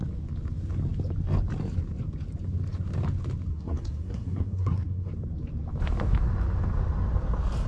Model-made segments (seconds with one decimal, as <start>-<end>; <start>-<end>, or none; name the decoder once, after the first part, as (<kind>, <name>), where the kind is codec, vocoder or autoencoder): 3.5-5.1 (codec, SNAC)

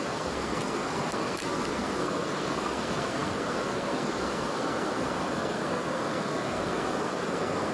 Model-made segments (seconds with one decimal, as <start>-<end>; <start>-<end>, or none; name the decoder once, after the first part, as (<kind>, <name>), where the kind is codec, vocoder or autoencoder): 0.0-7.7 (codec, SNAC)

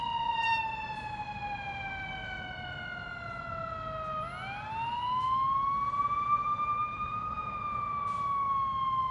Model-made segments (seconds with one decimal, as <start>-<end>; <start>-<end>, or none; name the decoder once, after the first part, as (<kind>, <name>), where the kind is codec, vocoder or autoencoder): 6.4-7.6 (vocoder, BigVGAN v2)

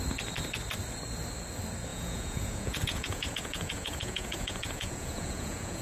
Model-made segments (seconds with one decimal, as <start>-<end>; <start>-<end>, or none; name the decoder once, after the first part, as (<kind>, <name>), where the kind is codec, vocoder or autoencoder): 1.9-5.8 (vocoder, Vocos)